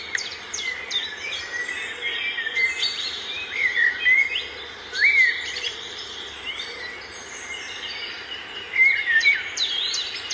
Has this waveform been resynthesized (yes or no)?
yes